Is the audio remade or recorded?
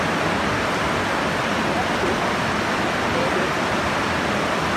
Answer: recorded